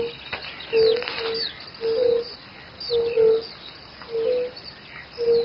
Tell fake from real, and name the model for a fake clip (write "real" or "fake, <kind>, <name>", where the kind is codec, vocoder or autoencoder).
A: real